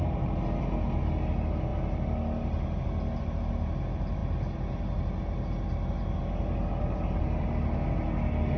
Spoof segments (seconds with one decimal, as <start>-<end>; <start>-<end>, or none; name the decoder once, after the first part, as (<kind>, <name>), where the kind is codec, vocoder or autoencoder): none